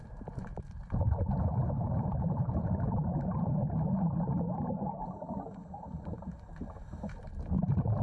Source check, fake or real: fake